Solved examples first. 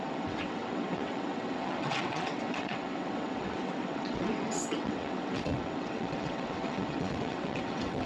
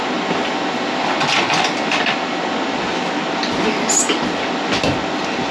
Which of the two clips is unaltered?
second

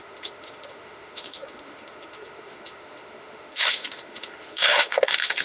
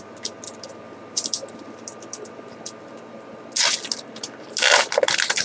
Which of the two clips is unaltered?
second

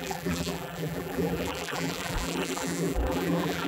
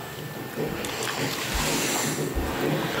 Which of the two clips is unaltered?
second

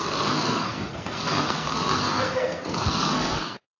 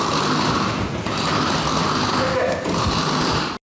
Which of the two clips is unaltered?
second